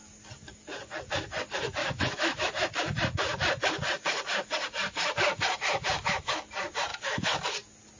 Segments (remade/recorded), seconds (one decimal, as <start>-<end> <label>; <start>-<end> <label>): 0.0-1.8 recorded; 1.8-2.5 remade; 2.5-5.7 recorded; 5.7-6.3 remade; 6.3-6.9 recorded; 6.9-7.4 remade; 7.4-8.0 recorded